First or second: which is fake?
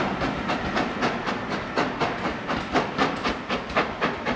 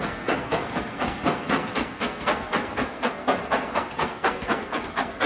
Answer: second